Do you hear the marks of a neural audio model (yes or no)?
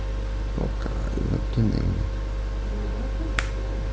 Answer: no